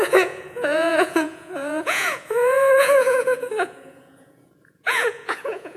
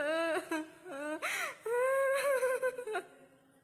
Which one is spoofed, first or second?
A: first